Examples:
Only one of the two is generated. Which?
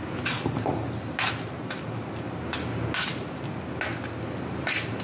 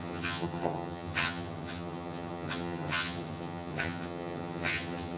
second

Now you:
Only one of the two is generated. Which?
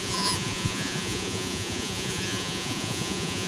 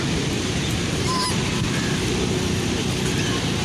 first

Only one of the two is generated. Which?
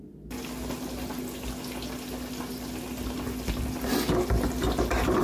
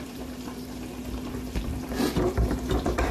second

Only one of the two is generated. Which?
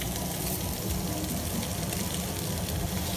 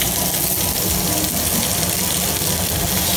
first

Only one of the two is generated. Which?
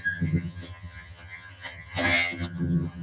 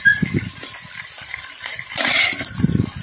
first